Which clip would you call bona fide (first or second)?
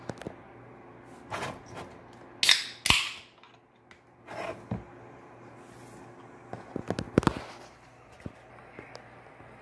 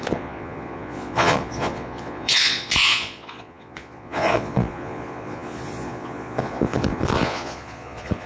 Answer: first